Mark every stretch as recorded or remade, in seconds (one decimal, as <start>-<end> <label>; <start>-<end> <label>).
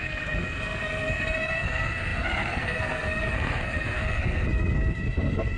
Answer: 0.0-5.6 remade